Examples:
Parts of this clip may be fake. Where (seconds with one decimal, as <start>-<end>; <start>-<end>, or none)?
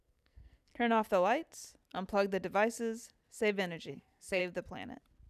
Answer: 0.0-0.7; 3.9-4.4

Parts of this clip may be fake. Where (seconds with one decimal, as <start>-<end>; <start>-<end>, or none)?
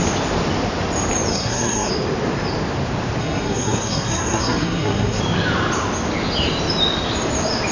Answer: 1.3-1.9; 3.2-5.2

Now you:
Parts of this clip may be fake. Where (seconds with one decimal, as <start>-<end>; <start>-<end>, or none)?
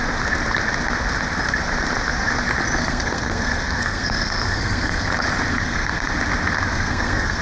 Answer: 2.8-5.1; 5.5-6.1; 6.7-7.4